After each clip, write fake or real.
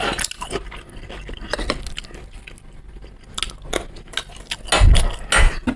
real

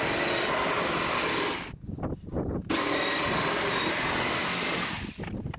real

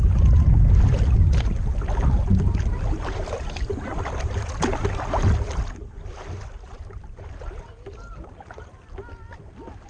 real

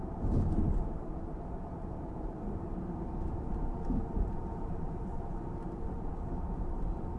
fake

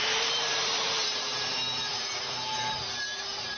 fake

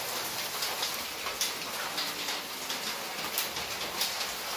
real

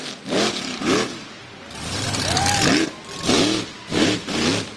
real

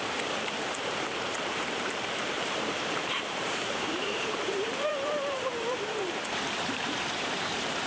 fake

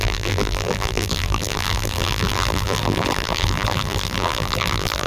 fake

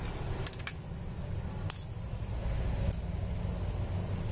real